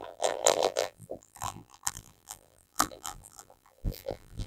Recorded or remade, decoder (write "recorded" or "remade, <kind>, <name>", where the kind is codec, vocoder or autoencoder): remade, vocoder, BigVGAN v2